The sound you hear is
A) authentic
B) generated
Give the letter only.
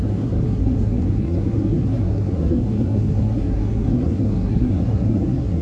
B